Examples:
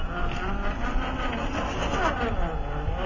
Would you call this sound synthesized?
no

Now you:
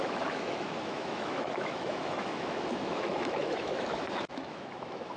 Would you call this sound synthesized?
yes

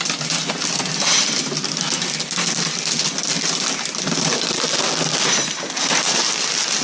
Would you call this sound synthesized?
no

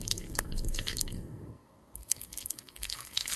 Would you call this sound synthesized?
yes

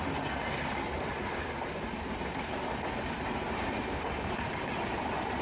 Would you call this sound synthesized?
no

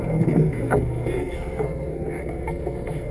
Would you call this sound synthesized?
yes